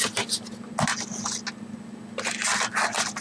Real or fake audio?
real